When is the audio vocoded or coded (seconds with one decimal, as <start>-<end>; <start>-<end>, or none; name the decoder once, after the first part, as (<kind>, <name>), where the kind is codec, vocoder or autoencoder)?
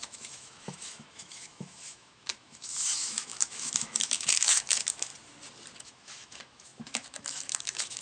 0.0-5.1 (autoencoder, DAC-VAE); 5.8-8.0